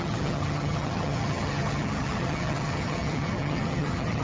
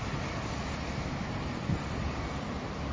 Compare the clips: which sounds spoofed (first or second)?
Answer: first